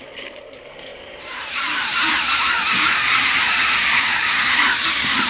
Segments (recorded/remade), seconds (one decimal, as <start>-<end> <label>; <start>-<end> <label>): 0.0-0.9 recorded; 0.9-2.5 remade; 2.5-3.8 recorded; 3.8-4.3 remade; 4.3-5.3 recorded